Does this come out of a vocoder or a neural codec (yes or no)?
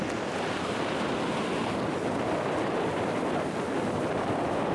yes